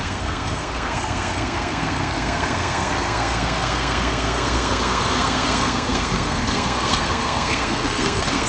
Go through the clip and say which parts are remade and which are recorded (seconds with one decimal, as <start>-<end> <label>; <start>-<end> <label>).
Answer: 0.0-8.5 remade